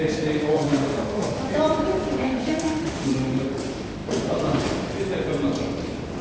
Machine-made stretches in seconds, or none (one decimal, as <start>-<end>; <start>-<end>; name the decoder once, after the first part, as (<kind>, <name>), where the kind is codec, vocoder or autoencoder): 0.5-1.3 (autoencoder, DAC-VAE); 2.2-3.5